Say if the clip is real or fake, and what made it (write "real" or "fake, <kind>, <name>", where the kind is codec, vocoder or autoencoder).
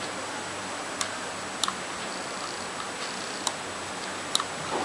real